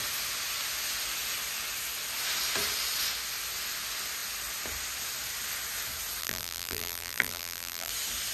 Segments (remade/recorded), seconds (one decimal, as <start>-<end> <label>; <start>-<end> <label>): 0.0-6.2 recorded; 6.2-7.9 remade; 7.9-8.3 recorded

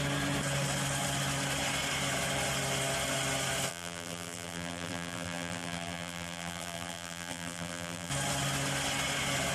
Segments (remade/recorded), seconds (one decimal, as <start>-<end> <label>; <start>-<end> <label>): 0.0-3.7 recorded; 3.7-8.1 remade; 8.1-9.5 recorded

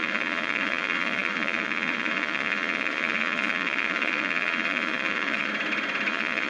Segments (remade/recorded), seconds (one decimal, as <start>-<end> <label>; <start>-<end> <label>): 0.0-5.5 remade; 5.5-6.1 recorded; 6.1-6.5 remade

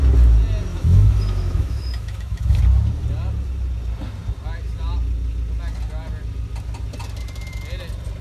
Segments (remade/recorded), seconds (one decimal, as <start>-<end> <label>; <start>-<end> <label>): 0.0-0.7 recorded; 0.7-2.6 remade; 2.6-8.2 recorded

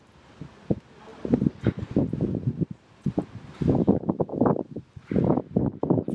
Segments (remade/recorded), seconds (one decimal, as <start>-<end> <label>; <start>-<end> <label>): 0.0-1.1 remade; 1.1-1.9 recorded; 1.9-4.3 remade; 4.3-4.9 recorded; 4.9-6.1 remade

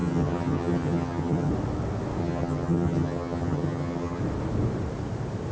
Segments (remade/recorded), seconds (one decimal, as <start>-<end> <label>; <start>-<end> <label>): 0.0-1.5 remade; 1.5-2.2 recorded; 2.2-4.2 remade; 4.2-5.5 recorded

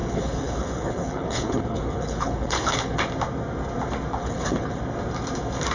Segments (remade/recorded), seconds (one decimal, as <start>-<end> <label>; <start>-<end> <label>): 0.0-3.0 remade; 3.0-4.2 recorded; 4.2-4.8 remade; 4.8-5.7 recorded